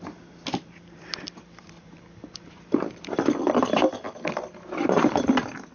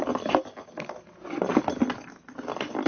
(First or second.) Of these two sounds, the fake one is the first